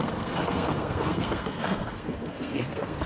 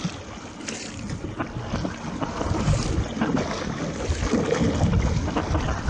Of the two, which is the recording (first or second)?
second